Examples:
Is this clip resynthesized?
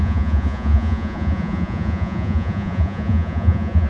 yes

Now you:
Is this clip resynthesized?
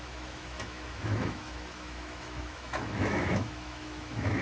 yes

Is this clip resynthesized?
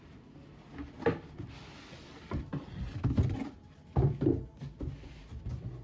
no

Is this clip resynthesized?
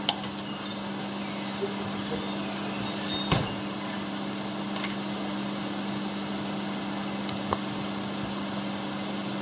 no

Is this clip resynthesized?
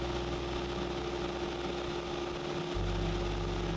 no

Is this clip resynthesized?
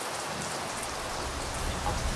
no